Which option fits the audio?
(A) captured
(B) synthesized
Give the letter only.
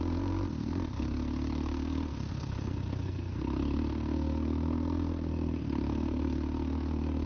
B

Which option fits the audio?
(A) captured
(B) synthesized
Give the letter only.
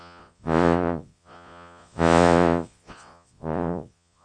B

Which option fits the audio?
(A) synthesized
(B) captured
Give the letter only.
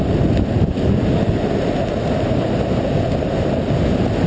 B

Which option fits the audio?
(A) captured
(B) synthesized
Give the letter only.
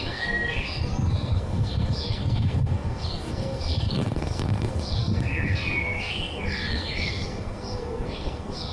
B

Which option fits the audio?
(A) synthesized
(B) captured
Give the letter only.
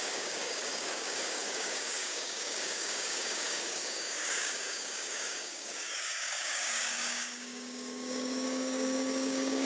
A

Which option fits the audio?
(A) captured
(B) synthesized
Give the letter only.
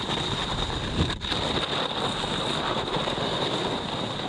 A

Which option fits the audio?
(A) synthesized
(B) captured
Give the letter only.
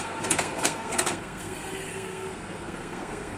A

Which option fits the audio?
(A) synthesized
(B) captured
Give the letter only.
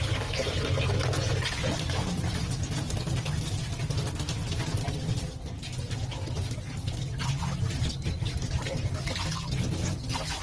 B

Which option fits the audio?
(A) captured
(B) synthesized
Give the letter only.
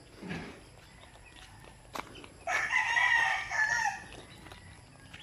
B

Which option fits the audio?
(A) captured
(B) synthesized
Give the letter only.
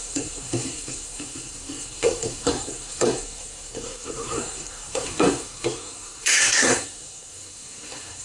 B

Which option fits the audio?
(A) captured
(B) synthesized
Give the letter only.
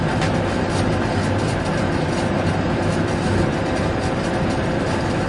A